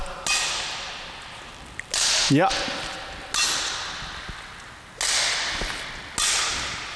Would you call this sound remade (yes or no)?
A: no